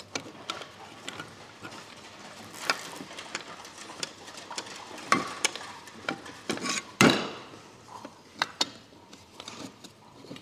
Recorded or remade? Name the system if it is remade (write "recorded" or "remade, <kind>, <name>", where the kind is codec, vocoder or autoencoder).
remade, vocoder, BigVGAN v2